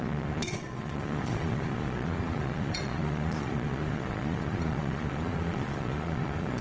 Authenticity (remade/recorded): remade